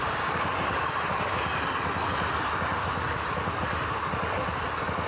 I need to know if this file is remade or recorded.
recorded